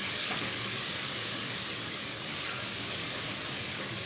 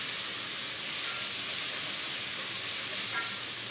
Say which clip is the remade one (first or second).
first